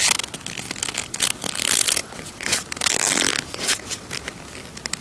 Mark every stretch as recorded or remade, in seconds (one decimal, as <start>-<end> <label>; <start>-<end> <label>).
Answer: 0.0-2.0 recorded; 2.0-2.6 remade; 2.6-3.5 recorded; 3.5-4.1 remade; 4.1-5.0 recorded